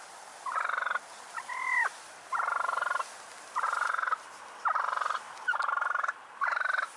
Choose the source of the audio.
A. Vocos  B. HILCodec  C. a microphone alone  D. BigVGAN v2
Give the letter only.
C